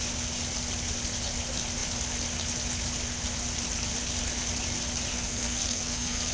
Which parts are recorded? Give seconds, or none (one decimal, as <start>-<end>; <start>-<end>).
0.0-5.1